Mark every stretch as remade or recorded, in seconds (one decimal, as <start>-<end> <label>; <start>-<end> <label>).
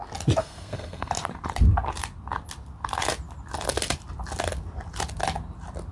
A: 0.0-0.4 recorded; 0.4-1.1 remade; 1.1-5.9 recorded